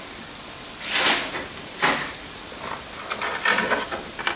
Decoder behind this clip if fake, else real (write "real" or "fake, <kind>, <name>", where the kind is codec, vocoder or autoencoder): real